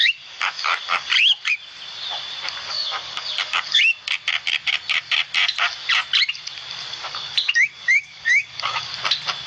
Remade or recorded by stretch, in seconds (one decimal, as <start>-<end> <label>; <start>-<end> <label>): 0.0-1.1 remade; 1.1-2.7 recorded; 2.7-3.8 remade; 3.8-6.9 recorded; 6.9-8.9 remade; 8.9-9.5 recorded